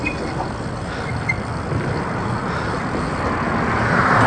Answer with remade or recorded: recorded